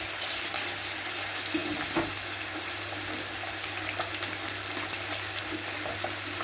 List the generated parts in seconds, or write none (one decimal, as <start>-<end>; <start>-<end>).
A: none